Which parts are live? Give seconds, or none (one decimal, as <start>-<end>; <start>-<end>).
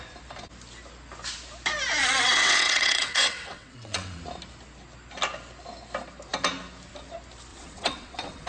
0.0-2.0; 4.2-7.5